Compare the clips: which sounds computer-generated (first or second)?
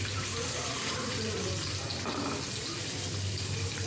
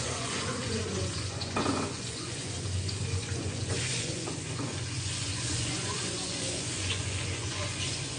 second